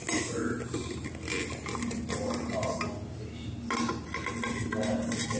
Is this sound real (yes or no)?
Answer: yes